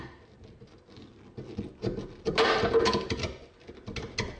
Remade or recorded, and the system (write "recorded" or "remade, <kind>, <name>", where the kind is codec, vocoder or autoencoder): recorded